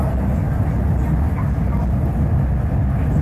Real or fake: real